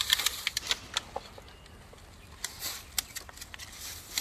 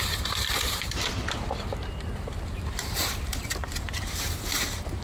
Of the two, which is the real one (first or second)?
first